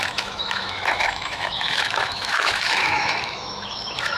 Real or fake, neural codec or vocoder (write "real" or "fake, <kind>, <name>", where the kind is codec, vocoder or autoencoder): fake, autoencoder, DAC-VAE